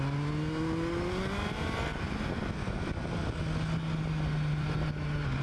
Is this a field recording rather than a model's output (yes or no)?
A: yes